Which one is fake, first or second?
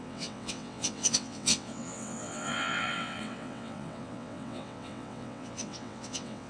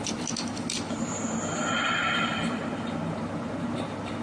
first